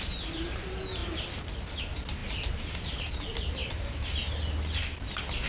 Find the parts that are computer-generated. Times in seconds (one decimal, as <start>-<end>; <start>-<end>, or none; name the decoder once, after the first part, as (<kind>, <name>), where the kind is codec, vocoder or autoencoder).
none